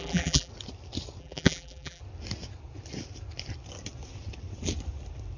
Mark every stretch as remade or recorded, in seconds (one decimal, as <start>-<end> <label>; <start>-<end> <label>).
0.0-0.5 remade; 0.5-1.2 recorded; 1.2-2.0 remade; 2.0-5.4 recorded